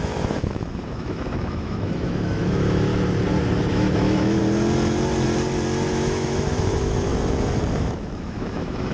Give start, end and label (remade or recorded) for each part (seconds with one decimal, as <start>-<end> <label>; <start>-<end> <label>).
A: 0.0-2.9 remade; 2.9-3.7 recorded; 3.7-4.4 remade; 4.4-5.9 recorded; 5.9-7.1 remade; 7.1-7.8 recorded; 7.8-8.9 remade